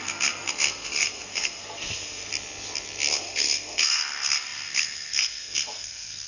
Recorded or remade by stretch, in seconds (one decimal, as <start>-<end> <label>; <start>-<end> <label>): 0.0-2.3 remade; 2.3-3.1 recorded; 3.1-6.3 remade